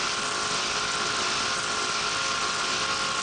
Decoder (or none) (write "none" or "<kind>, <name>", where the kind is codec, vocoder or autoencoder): none